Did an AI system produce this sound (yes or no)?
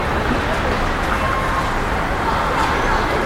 no